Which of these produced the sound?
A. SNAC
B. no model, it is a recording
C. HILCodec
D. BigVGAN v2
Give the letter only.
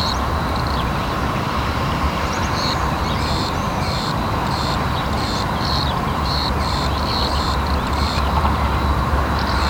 D